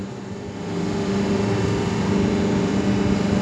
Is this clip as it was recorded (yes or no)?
yes